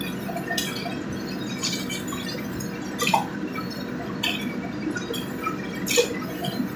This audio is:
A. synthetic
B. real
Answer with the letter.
B